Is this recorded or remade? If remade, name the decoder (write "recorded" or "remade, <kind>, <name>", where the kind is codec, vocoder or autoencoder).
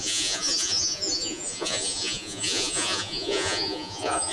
remade, vocoder, Vocos